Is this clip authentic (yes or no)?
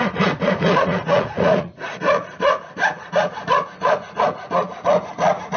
no